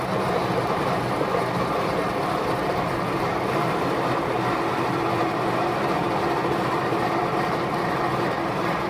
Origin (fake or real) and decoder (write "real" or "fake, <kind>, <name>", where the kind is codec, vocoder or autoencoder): fake, vocoder, BigVGAN v2